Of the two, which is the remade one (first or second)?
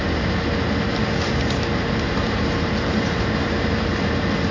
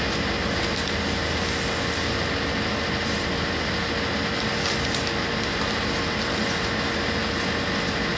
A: first